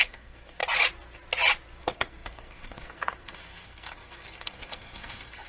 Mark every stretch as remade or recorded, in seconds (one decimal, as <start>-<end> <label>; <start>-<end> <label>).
0.0-0.6 remade; 0.6-1.8 recorded; 1.8-5.5 remade